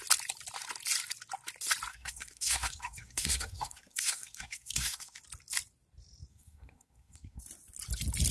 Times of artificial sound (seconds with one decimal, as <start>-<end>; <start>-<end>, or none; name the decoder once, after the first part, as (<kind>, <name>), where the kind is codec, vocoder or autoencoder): 1.9-5.2 (codec, SNAC); 6.3-7.4